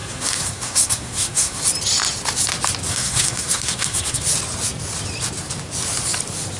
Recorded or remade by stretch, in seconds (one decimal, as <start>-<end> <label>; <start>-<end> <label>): 0.0-1.6 remade; 1.6-2.9 recorded; 2.9-4.2 remade; 4.2-6.6 recorded